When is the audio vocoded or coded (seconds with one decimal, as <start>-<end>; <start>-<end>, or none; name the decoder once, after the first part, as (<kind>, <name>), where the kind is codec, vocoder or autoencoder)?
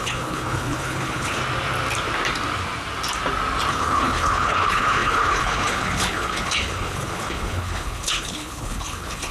0.0-1.4 (codec, HILCodec); 3.7-9.3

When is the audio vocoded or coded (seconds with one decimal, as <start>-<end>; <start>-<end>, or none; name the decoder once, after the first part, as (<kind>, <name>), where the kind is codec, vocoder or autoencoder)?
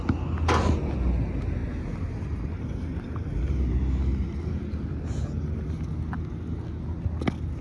none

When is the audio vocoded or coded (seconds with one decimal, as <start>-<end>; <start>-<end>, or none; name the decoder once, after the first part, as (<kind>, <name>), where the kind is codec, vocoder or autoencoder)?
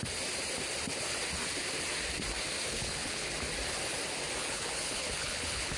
2.7-3.3 (codec, HILCodec); 4.4-5.8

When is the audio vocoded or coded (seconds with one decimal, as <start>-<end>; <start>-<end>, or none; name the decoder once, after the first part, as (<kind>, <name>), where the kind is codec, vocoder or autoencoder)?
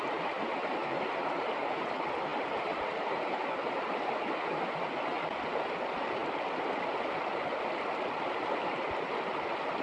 none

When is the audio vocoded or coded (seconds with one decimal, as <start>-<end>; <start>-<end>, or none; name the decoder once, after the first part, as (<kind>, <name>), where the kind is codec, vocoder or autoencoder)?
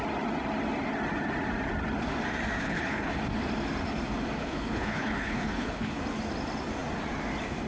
2.6-3.1 (codec, HILCodec); 4.4-6.0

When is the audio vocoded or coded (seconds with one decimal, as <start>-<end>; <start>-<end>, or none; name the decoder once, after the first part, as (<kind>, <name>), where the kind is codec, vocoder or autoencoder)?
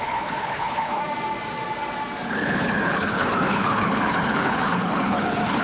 0.0-1.0 (codec, HILCodec); 2.3-5.6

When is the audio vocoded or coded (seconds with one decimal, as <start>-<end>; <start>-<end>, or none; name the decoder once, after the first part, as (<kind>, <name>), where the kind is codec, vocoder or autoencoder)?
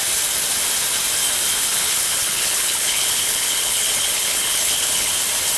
1.7-5.1 (codec, HILCodec)